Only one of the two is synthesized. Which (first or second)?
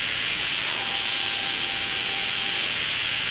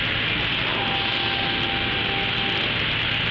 first